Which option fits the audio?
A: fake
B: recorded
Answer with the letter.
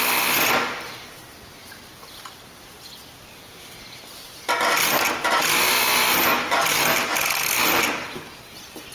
B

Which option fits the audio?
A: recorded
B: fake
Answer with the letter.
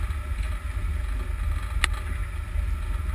A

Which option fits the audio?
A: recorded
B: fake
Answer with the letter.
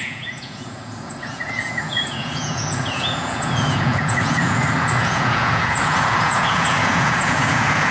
B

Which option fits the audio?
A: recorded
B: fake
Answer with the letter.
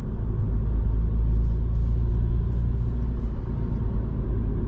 A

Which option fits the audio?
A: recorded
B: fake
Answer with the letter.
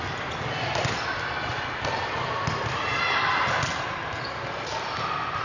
A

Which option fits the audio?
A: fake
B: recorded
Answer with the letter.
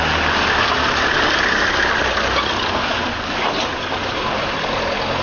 B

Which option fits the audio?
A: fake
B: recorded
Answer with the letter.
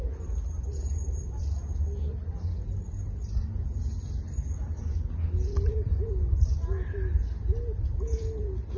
B